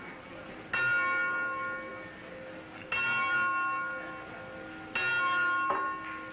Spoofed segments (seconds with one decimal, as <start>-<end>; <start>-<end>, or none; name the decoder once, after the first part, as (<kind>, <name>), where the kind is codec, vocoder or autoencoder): none

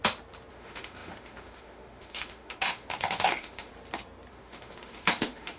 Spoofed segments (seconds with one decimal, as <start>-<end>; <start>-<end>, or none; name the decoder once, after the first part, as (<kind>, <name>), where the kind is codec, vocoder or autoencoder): 0.5-3.7 (autoencoder, DAC-VAE); 4.3-5.6